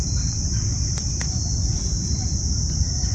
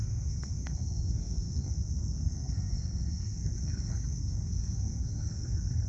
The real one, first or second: first